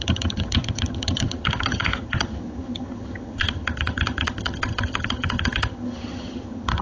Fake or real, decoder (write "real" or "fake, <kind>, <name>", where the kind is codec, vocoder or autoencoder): fake, vocoder, HiFi-GAN